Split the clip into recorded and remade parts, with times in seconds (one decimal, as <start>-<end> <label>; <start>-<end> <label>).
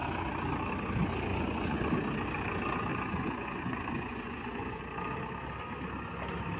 0.0-1.3 recorded; 1.3-1.9 remade; 1.9-2.9 recorded; 2.9-4.8 remade; 4.8-6.6 recorded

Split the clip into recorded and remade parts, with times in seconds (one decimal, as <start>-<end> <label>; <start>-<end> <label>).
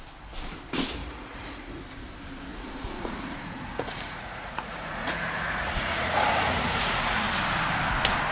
0.0-1.0 recorded; 1.0-1.8 remade; 1.8-2.5 recorded; 2.5-7.2 remade; 7.2-8.3 recorded